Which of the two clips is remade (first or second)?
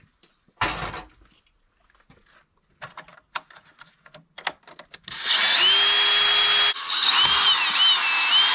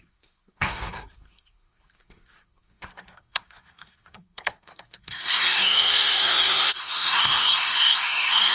second